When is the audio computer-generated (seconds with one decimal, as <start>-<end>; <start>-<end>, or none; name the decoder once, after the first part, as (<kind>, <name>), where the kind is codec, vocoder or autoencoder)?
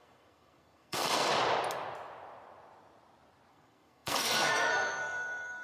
0.0-1.3 (codec, SNAC); 3.5-5.6